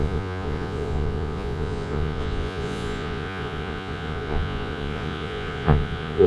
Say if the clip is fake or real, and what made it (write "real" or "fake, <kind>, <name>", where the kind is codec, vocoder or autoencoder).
fake, vocoder, Vocos